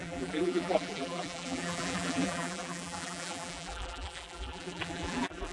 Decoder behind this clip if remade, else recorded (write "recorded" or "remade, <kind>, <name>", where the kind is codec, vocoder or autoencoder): remade, vocoder, BigVGAN v2